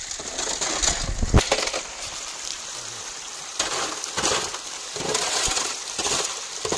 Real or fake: real